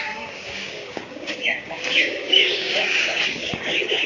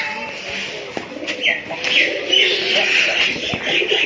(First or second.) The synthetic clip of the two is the first